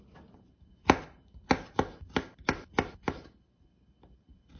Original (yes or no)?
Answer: yes